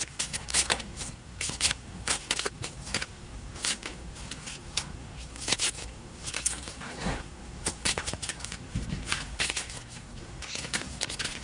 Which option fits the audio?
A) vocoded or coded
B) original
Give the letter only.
A